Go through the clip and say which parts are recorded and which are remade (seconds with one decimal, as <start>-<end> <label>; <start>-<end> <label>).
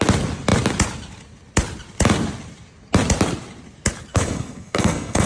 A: 0.0-4.1 recorded; 4.1-5.3 remade